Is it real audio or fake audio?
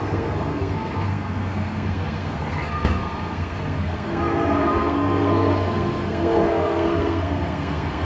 fake